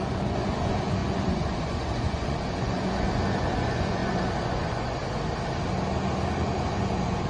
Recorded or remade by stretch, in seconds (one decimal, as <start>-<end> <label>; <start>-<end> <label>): 0.0-5.0 remade; 5.0-6.7 recorded; 6.7-7.3 remade